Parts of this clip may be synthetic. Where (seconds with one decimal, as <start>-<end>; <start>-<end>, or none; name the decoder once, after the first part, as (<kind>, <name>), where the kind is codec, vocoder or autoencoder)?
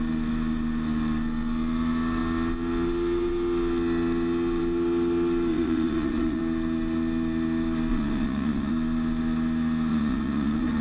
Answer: 5.5-6.4 (vocoder, Vocos); 7.9-8.7; 9.9-10.8